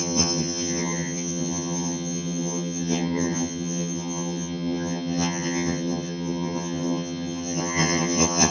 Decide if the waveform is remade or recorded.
remade